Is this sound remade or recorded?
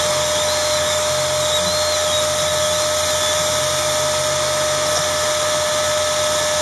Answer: recorded